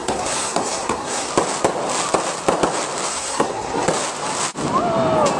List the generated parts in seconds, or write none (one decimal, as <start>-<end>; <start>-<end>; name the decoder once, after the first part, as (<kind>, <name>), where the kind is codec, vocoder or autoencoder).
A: 0.0-1.3 (codec, SNAC); 3.1-3.9